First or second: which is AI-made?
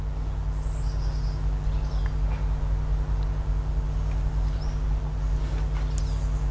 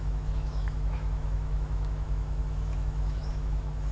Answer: second